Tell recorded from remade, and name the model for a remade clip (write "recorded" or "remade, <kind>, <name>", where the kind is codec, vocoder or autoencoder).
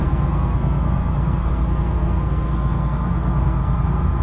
remade, codec, SNAC